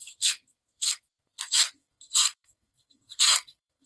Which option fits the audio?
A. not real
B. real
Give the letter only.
A